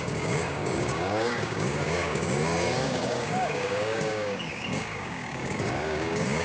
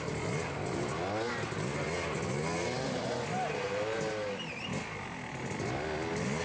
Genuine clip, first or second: second